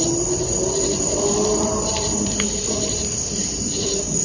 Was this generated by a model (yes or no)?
yes